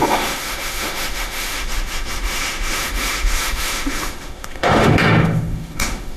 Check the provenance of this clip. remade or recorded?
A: remade